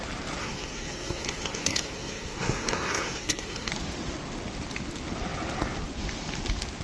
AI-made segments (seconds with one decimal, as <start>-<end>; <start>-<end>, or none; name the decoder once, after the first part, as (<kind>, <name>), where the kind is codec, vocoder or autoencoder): 0.4-3.7 (codec, SNAC)